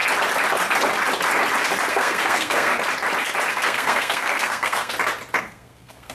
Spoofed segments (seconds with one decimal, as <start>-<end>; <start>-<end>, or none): 1.9-2.7; 3.5-4.9; 5.4-6.1